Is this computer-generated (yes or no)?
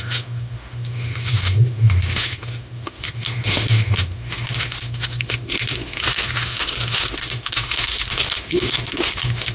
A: yes